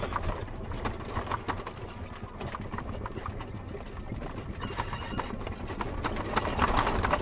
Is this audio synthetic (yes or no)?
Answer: no